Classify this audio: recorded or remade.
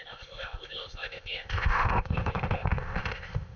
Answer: remade